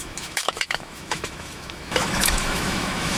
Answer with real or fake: fake